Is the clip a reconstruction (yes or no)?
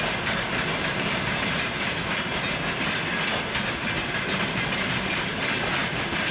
no